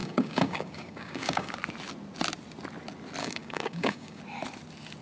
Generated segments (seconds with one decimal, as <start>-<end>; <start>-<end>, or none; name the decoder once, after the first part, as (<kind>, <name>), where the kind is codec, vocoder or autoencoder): 0.0-1.5 (codec, DAC); 3.2-4.2